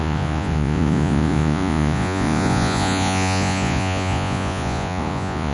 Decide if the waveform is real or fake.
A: fake